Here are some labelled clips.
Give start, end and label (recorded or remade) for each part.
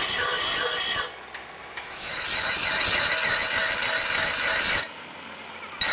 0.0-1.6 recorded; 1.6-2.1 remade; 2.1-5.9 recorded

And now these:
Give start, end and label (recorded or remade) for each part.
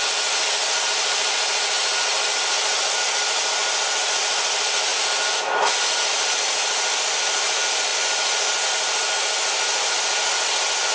0.0-10.9 recorded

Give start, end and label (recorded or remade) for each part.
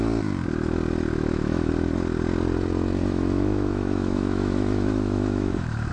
0.0-1.1 recorded; 1.1-1.7 remade; 1.7-3.0 recorded; 3.0-5.9 remade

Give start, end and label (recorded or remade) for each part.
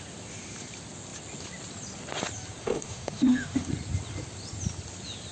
0.0-2.6 recorded; 2.6-3.7 remade; 3.7-5.3 recorded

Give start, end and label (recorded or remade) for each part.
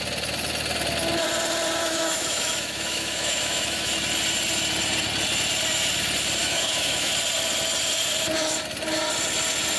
0.0-1.8 recorded; 1.8-3.9 remade; 3.9-6.4 recorded; 6.4-7.1 remade; 7.1-9.8 recorded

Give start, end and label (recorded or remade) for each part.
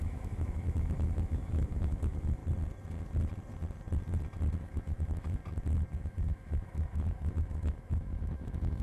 0.0-2.4 remade; 2.4-4.6 recorded; 4.6-5.4 remade; 5.4-6.0 recorded; 6.0-8.8 remade